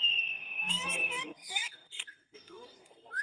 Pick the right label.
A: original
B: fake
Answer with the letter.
B